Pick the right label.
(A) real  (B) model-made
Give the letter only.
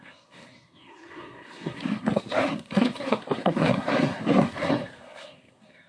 B